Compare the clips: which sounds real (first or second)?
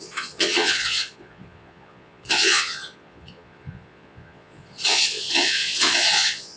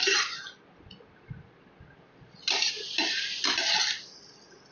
second